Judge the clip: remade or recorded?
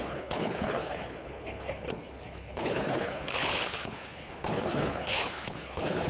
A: remade